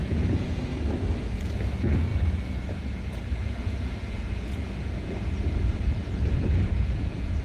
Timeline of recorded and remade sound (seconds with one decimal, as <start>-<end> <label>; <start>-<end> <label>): 0.0-0.7 remade; 0.7-1.2 recorded; 1.2-7.4 remade